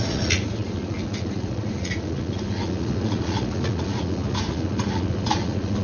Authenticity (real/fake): fake